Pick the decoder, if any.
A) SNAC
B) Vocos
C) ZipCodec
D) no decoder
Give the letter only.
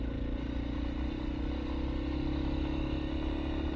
D